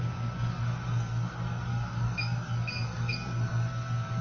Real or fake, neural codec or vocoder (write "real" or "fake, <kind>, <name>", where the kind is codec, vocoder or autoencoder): fake, codec, SNAC